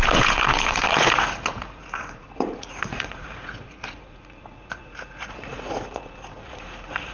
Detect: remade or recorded remade